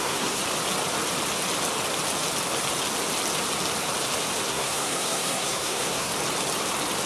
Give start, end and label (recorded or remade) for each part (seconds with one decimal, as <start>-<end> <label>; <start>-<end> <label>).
0.0-0.4 remade; 0.4-4.5 recorded; 4.5-6.1 remade; 6.1-7.1 recorded